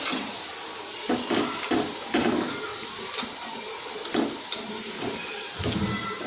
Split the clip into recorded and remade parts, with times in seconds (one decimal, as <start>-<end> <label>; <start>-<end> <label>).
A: 0.0-6.3 recorded